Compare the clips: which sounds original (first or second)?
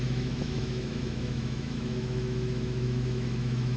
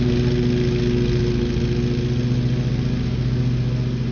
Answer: second